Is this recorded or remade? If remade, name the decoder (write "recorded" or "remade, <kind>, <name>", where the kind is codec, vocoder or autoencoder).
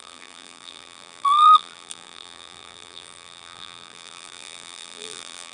remade, vocoder, BigVGAN v2